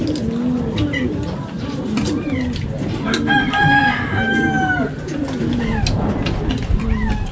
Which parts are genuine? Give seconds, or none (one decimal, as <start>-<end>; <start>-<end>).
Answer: 0.0-7.3